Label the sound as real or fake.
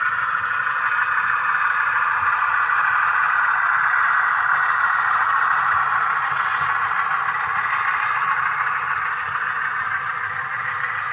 real